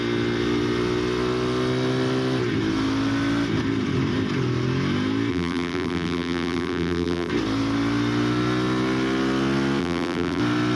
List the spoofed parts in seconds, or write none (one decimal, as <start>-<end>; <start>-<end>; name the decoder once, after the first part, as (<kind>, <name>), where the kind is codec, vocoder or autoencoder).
5.3-7.3 (vocoder, BigVGAN v2); 9.8-10.4